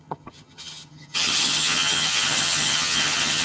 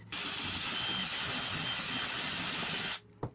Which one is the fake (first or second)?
first